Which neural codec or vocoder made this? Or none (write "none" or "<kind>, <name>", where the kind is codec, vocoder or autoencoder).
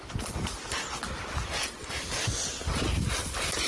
none